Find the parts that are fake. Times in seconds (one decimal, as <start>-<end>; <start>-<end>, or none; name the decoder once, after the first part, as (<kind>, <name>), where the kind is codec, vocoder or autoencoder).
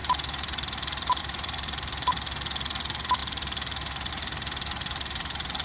none